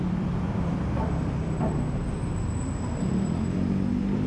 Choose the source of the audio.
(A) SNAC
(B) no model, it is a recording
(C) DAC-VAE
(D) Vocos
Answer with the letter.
B